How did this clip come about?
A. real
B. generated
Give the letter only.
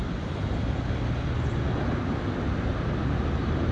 A